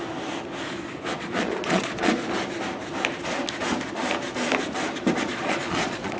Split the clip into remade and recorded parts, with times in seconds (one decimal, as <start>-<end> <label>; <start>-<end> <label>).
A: 0.0-1.1 recorded; 1.1-2.1 remade; 2.1-5.3 recorded; 5.3-6.2 remade